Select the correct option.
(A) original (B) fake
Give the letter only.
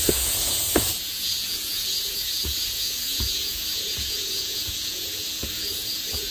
B